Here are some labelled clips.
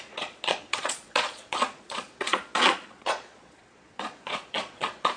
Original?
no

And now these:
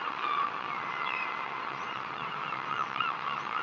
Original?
no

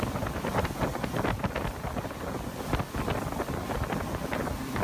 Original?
yes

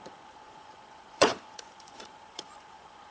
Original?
no